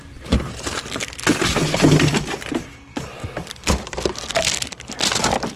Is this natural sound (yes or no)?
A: yes